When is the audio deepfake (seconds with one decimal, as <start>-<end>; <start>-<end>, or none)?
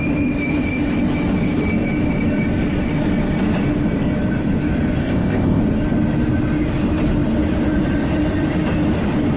5.0-5.6